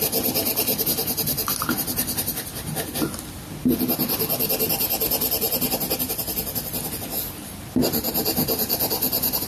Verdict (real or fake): real